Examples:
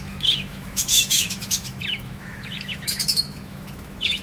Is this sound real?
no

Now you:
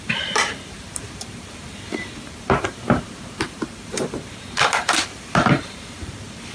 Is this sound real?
no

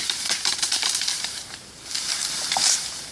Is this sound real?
no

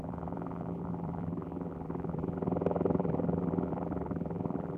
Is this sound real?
no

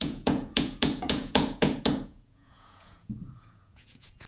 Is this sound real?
no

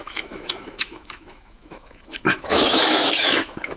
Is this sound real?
no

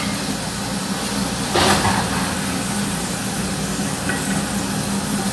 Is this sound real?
yes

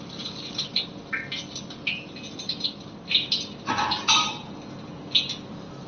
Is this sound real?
yes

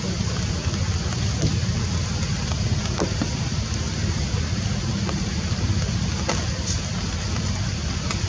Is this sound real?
yes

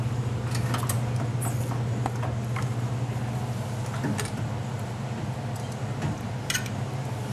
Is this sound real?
yes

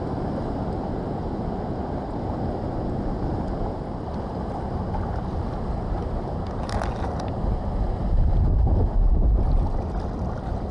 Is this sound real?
yes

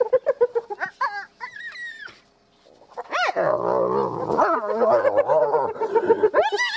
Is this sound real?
yes